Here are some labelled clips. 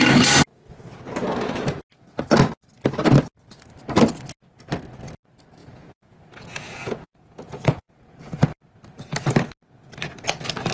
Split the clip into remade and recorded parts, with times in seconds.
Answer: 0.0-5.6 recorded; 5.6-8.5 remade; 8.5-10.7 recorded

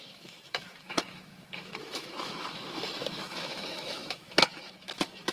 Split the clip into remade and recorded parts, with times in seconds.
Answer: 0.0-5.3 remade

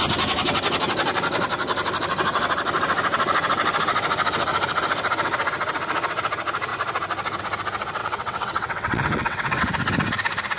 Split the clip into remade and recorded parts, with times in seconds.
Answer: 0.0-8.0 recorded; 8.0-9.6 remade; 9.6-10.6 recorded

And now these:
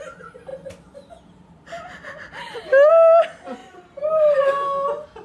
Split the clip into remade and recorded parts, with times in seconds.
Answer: 0.0-3.6 recorded; 3.6-4.5 remade; 4.5-5.2 recorded

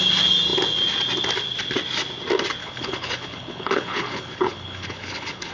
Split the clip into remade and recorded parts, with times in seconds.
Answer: 0.0-2.6 recorded; 2.6-5.5 remade

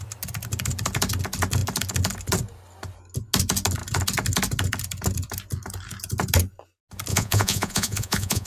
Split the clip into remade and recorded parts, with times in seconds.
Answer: 0.0-7.1 recorded; 7.1-8.5 remade